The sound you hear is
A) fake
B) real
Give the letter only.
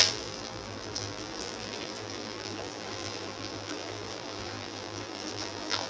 A